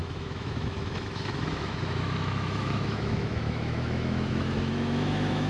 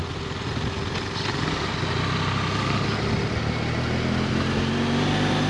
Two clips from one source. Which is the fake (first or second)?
first